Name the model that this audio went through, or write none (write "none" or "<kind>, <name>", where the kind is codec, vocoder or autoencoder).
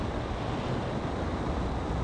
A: none